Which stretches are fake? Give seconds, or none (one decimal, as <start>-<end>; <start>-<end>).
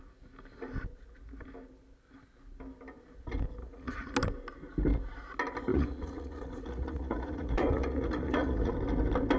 3.6-4.1; 5.7-8.7